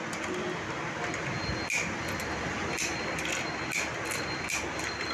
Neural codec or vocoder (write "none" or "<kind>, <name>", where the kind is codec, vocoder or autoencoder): none